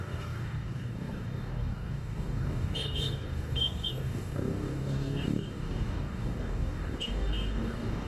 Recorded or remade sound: remade